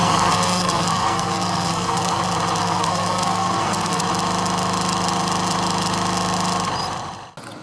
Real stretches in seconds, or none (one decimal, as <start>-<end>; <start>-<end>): 2.2-2.6; 4.0-7.6